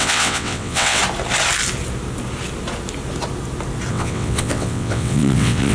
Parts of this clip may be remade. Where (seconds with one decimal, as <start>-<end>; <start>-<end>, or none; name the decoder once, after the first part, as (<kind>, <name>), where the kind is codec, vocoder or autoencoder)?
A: 0.0-1.0 (vocoder, WaveNeXt); 3.9-5.7